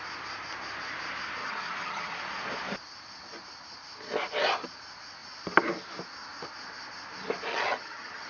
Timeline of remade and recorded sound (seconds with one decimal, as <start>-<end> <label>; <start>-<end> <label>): 0.0-1.4 recorded; 1.4-2.2 remade; 2.2-7.5 recorded; 7.5-8.3 remade